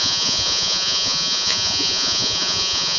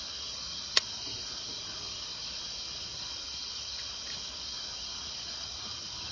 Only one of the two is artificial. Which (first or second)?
first